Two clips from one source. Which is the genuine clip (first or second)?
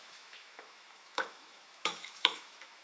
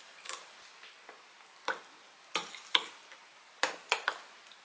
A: second